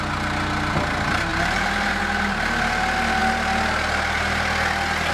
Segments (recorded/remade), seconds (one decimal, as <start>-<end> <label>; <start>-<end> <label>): 0.0-1.3 recorded; 1.3-2.0 remade; 2.0-5.1 recorded